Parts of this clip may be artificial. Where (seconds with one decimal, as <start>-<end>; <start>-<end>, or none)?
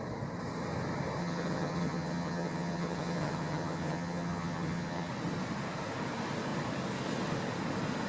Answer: 1.2-5.1